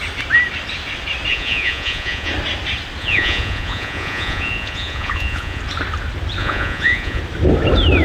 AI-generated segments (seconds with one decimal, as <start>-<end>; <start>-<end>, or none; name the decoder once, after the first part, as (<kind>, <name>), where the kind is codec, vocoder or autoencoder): 1.3-2.3 (vocoder, Vocos); 3.0-5.6; 6.4-7.2